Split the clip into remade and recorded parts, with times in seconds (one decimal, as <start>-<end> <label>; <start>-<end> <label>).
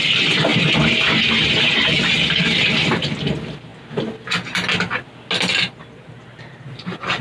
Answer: 0.0-7.2 recorded